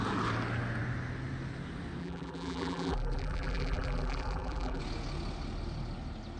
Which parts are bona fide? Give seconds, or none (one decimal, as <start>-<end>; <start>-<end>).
0.0-2.0; 4.8-6.4